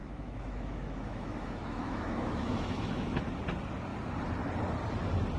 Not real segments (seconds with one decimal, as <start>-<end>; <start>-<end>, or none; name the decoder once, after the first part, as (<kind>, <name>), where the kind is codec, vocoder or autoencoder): 0.0-3.2 (autoencoder, DAC-VAE)